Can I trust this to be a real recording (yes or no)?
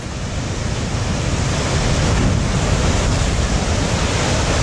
yes